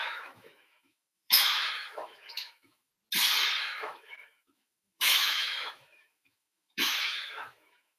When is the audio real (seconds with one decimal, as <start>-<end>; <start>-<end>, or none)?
2.9-3.6